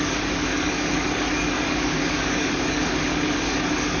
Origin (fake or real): fake